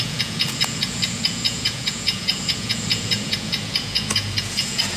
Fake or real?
fake